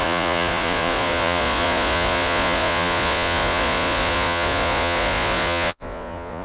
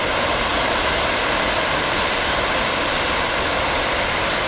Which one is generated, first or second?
first